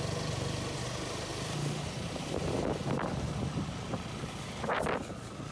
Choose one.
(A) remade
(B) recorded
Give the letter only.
B